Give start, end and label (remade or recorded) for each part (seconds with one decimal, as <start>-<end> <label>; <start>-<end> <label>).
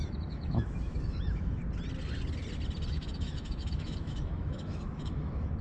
0.0-1.6 remade; 1.6-2.9 recorded; 2.9-5.6 remade